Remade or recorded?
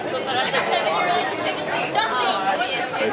recorded